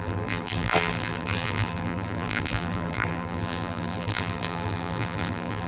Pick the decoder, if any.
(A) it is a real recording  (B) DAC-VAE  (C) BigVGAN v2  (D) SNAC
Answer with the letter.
C